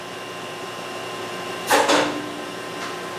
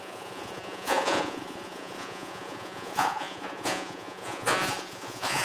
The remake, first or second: second